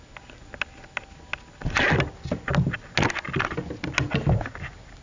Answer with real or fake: real